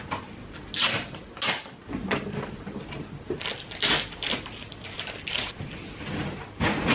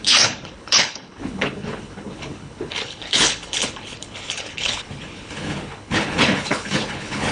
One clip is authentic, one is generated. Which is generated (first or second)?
second